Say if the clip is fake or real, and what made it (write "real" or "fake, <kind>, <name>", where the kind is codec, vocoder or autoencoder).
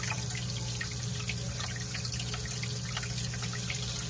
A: real